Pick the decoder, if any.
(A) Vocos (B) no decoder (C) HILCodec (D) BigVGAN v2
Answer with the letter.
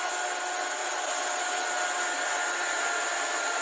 B